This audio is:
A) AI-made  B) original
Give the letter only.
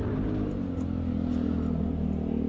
B